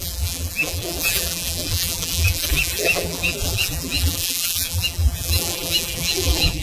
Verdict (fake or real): fake